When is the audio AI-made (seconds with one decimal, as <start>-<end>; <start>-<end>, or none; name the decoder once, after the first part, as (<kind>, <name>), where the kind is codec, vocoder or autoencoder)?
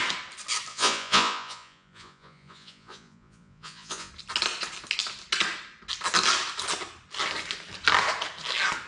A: 0.7-4.1 (vocoder, Vocos)